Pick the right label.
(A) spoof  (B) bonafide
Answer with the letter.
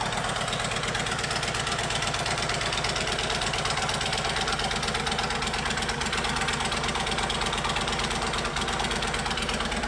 B